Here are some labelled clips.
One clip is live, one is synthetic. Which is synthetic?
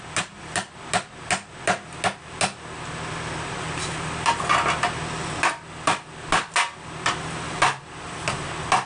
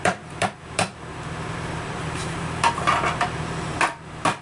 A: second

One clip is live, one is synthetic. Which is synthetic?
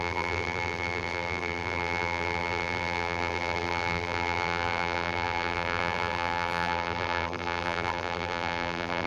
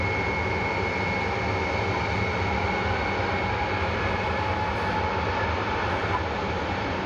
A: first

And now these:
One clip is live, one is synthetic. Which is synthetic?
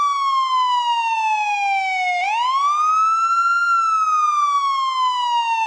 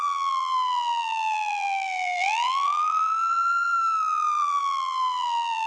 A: second